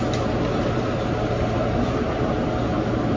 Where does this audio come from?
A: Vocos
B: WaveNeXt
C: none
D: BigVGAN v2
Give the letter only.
C